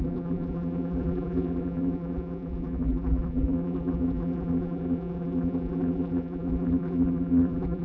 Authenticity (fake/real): fake